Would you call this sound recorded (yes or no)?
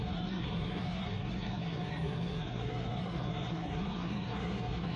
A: no